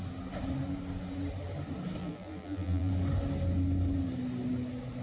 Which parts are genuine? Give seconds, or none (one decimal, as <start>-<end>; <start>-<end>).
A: 0.0-2.0; 2.9-5.0